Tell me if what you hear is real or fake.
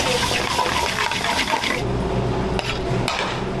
real